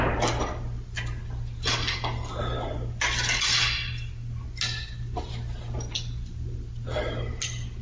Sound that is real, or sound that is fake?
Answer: real